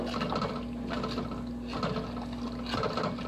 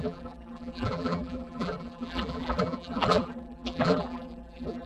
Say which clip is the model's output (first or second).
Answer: second